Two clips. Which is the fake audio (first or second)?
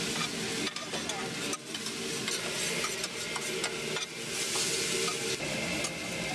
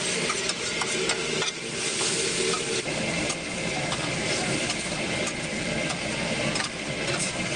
second